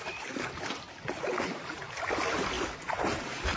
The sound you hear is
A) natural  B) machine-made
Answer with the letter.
A